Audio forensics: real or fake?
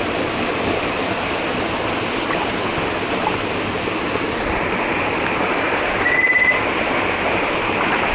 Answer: fake